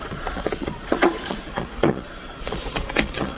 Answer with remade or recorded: remade